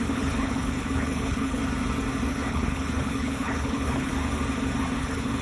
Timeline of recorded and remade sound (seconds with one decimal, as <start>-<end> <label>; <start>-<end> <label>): 0.0-1.6 remade; 1.6-2.3 recorded; 2.3-4.1 remade; 4.1-5.0 recorded; 5.0-5.4 remade